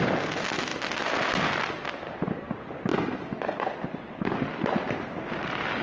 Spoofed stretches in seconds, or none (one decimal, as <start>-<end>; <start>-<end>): 0.0-2.9; 5.2-5.8